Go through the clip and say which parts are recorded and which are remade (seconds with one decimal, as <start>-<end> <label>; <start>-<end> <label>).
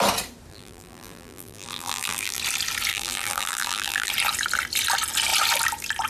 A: 0.0-0.5 recorded; 0.5-2.4 remade; 2.4-2.9 recorded; 2.9-4.1 remade; 4.1-6.1 recorded